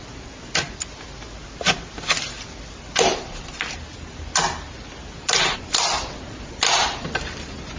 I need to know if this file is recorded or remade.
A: recorded